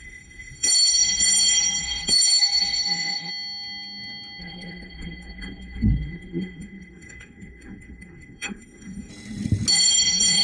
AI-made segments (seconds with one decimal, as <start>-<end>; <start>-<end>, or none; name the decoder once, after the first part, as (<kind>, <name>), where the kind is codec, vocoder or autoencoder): 0.0-3.3 (codec, SNAC); 4.4-9.1; 9.7-10.4